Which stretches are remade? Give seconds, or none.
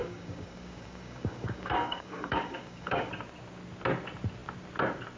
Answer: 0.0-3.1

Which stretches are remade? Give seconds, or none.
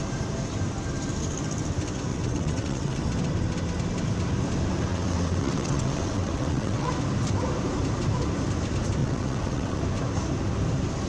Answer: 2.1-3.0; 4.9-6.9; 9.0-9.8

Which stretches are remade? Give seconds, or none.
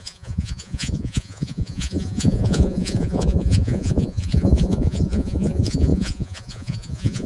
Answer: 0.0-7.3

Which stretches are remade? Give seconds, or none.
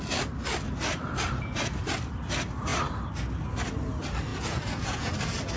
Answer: 4.3-5.1